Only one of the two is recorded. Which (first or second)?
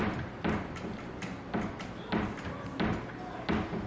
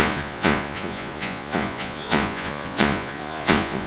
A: first